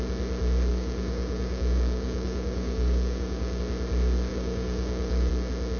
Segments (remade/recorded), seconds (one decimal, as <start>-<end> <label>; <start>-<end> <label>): 0.0-0.7 recorded; 0.7-3.6 remade; 3.6-4.3 recorded; 4.3-5.3 remade; 5.3-5.8 recorded